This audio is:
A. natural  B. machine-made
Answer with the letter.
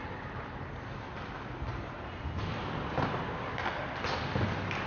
A